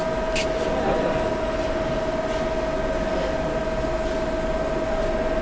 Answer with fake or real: real